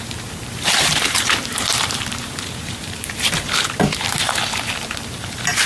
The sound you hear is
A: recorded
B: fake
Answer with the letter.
B